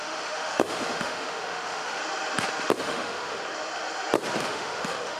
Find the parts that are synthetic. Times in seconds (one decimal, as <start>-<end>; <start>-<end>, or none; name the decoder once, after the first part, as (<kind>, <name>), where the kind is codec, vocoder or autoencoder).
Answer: 0.0-2.0 (autoencoder, DAC-VAE); 2.8-3.4; 4.4-5.2